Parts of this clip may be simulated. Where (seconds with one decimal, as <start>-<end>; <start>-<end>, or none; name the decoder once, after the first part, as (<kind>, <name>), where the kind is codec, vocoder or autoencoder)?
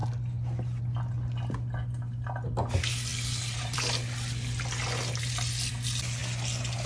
0.0-0.8 (vocoder, BigVGAN v2); 3.1-5.7